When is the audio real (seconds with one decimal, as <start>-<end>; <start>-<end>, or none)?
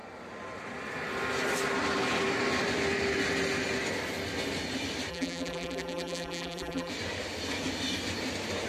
0.0-5.1; 6.9-8.7